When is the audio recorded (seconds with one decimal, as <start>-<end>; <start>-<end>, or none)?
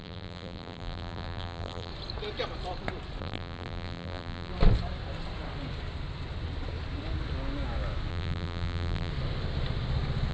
1.9-3.2; 4.5-8.1; 9.1-10.3